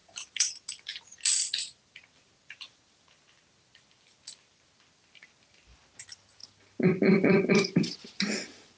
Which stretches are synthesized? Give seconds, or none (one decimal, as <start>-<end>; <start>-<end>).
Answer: 0.0-0.5